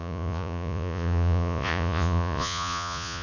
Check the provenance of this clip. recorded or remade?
remade